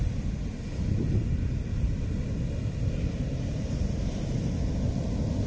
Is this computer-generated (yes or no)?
no